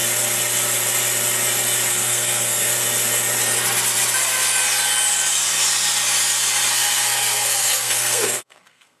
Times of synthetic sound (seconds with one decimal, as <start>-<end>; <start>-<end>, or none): 1.9-2.7; 6.7-9.0